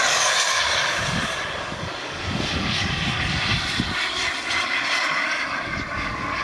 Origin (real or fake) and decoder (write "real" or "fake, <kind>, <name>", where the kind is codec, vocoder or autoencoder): fake, codec, DAC